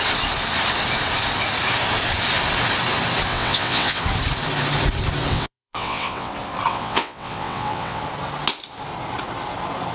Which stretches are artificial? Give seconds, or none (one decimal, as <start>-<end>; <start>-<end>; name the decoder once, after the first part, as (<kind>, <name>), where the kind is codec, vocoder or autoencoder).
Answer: 3.3-4.0 (vocoder, WaveNeXt); 5.3-6.3; 6.7-8.0